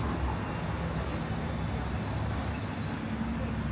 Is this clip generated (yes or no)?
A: no